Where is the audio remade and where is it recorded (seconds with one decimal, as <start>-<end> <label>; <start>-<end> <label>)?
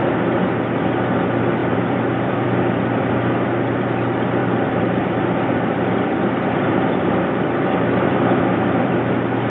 0.0-1.6 recorded; 1.6-3.1 remade; 3.1-4.4 recorded; 4.4-8.9 remade; 8.9-9.5 recorded